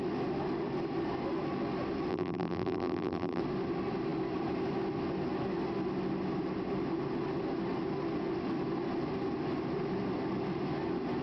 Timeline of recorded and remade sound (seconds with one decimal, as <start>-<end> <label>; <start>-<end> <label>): 0.0-2.1 recorded; 2.1-3.4 remade; 3.4-11.2 recorded

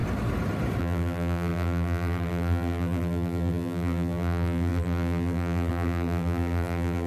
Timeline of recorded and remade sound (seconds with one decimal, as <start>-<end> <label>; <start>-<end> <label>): 0.0-0.8 recorded; 0.8-7.1 remade

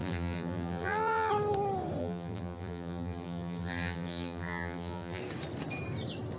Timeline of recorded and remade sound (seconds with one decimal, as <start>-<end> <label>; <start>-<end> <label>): 0.0-1.3 remade; 1.3-2.0 recorded; 2.0-5.2 remade; 5.2-6.4 recorded

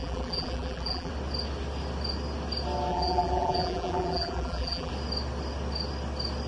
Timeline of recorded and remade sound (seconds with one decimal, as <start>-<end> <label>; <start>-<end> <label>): 0.0-1.1 remade; 1.1-2.9 recorded; 2.9-4.9 remade; 4.9-6.5 recorded

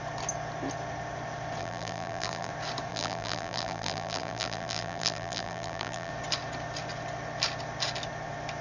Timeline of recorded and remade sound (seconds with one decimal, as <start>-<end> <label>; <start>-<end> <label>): 0.0-1.6 recorded; 1.6-2.5 remade; 2.5-2.9 recorded; 2.9-6.1 remade; 6.1-8.6 recorded

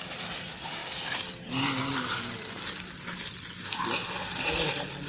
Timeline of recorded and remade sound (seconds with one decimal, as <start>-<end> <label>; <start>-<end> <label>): 0.0-5.1 recorded